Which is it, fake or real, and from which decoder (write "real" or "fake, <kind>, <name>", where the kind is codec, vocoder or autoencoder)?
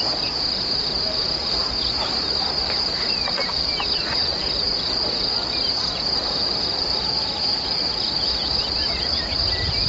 real